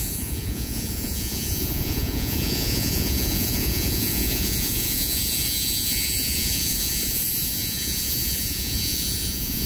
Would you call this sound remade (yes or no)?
yes